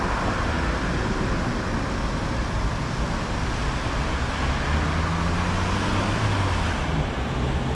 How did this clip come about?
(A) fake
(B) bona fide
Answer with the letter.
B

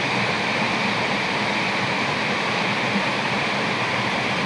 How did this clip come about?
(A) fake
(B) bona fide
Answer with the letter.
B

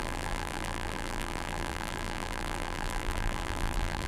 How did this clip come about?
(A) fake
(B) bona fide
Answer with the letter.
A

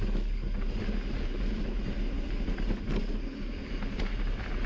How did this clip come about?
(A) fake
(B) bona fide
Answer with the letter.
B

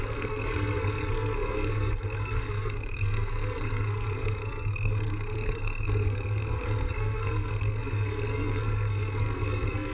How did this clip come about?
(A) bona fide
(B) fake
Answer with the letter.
B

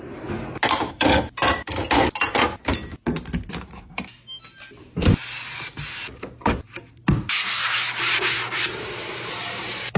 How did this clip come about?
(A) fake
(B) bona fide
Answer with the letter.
B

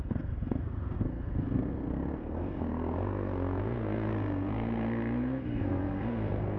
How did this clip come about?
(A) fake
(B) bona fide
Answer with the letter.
A